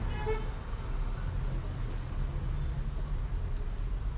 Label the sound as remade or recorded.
recorded